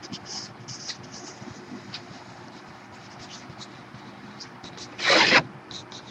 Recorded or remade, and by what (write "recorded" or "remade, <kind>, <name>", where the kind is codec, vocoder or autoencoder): remade, vocoder, BigVGAN v2